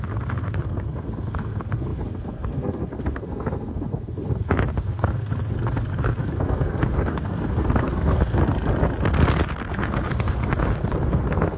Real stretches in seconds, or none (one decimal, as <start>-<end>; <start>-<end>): 8.4-9.7